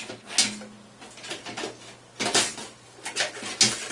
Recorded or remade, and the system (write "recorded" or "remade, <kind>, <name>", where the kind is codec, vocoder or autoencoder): recorded